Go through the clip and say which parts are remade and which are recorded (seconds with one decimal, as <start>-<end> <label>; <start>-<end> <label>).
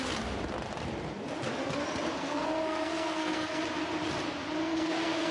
0.0-2.2 recorded; 2.2-3.6 remade; 3.6-4.6 recorded; 4.6-5.3 remade